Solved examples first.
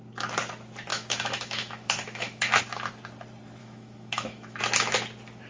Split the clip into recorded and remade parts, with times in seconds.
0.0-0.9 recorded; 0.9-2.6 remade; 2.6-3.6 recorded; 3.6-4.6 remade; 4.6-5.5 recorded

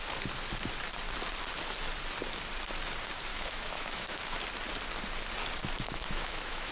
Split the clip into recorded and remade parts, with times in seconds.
0.0-3.3 recorded; 3.3-4.2 remade; 4.2-5.6 recorded; 5.6-6.7 remade

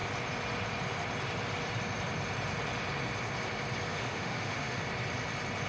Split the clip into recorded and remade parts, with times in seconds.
0.0-3.9 recorded; 3.9-4.8 remade; 4.8-5.7 recorded

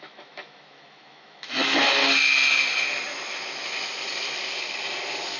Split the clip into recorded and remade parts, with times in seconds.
0.0-2.0 remade; 2.0-5.4 recorded

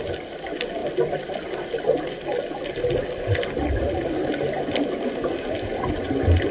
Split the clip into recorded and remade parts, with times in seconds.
0.0-6.5 recorded

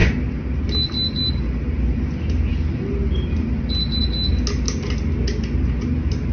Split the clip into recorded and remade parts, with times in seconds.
0.0-6.3 recorded

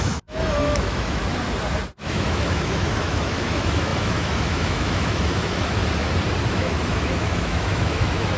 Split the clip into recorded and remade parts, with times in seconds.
0.0-1.2 remade; 1.2-2.0 recorded; 2.0-5.8 remade; 5.8-6.5 recorded; 6.5-8.4 remade